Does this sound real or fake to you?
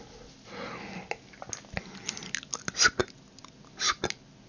real